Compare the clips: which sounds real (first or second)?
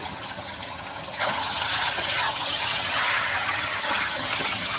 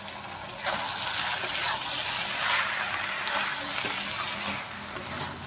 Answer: second